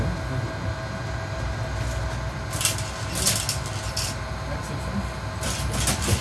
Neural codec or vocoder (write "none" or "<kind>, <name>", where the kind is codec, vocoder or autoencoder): none